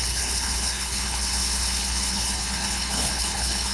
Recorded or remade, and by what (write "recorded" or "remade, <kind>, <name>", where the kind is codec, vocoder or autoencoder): remade, codec, HILCodec